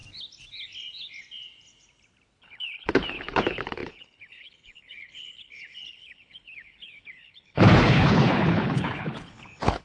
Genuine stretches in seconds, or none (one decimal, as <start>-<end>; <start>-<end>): 0.0-2.4